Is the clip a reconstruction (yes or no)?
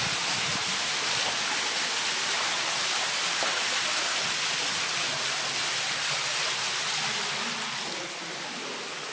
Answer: no